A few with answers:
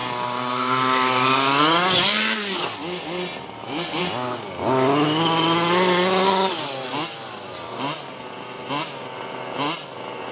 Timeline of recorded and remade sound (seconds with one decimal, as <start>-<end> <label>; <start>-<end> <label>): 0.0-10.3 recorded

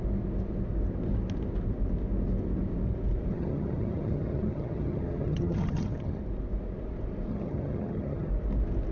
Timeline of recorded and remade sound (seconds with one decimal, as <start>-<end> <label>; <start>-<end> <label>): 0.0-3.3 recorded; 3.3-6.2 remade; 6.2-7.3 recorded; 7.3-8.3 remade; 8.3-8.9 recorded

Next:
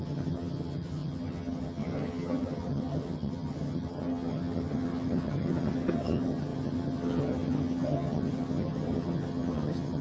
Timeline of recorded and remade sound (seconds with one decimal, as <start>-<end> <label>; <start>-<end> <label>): 0.0-10.0 remade

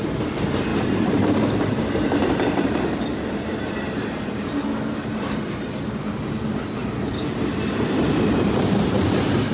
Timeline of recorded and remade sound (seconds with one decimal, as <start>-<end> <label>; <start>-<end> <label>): 0.0-9.5 recorded